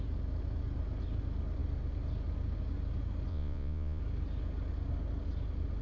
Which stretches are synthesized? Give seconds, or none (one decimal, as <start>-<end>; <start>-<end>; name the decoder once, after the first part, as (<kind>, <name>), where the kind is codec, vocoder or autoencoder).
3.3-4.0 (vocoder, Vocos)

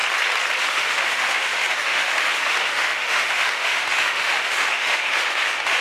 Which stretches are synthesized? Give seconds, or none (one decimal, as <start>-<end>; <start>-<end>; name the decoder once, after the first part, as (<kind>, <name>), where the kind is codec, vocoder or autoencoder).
0.6-5.8 (autoencoder, DAC-VAE)

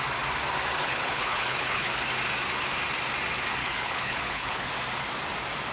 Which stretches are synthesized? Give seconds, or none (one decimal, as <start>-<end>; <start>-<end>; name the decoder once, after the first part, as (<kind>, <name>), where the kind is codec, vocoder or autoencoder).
0.8-1.9 (codec, HILCodec); 3.6-4.7